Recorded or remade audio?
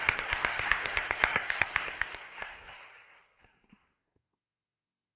remade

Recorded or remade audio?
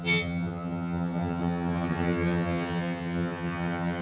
remade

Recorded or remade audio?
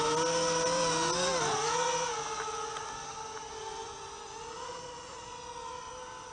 recorded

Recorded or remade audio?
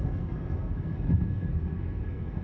remade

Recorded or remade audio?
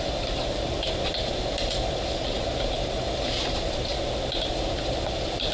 remade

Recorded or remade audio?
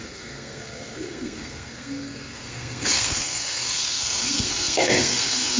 remade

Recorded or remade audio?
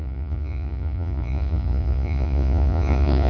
remade